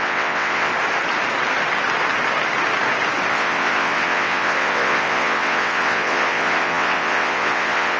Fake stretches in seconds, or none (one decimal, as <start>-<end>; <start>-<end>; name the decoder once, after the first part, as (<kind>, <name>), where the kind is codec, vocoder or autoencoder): 0.0-0.7 (vocoder, WaveNeXt); 3.3-8.0